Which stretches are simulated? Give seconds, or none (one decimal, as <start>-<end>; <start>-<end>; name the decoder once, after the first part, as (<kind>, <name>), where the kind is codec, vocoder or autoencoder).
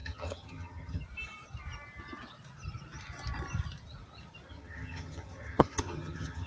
0.0-1.0 (vocoder, HiFi-GAN); 4.5-6.5